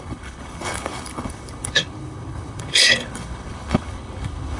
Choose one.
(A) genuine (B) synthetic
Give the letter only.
B